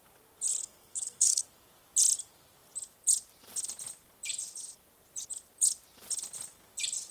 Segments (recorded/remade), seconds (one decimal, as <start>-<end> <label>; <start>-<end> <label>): 0.0-0.6 recorded; 0.6-1.4 remade; 1.4-7.1 recorded